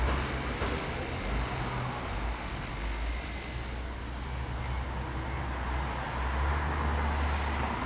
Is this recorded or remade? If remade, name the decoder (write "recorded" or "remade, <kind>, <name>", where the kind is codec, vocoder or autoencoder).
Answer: recorded